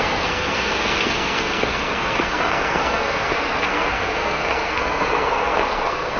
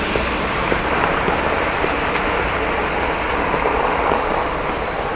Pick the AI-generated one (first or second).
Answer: first